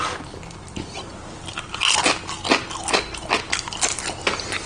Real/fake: real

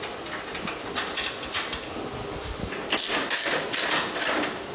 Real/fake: real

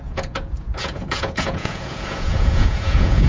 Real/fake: fake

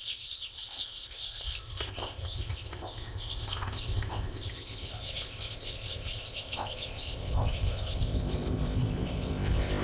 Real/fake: fake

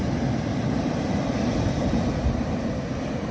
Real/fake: real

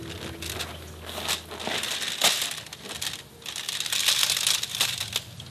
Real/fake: real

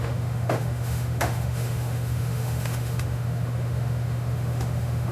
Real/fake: fake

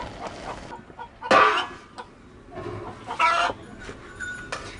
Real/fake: real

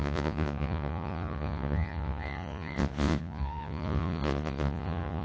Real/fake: fake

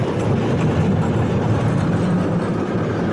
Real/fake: real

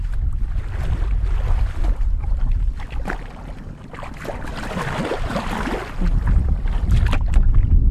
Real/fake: real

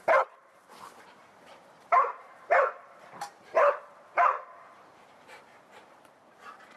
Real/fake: fake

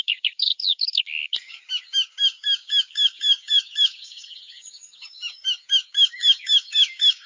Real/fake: fake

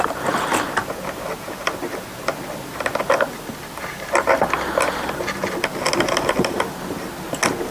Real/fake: real